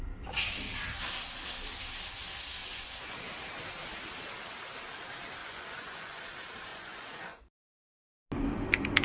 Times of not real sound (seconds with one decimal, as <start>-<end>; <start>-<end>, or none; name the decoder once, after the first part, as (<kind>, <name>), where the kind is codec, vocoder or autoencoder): 2.6-3.2 (vocoder, Vocos); 5.4-6.2; 6.7-7.4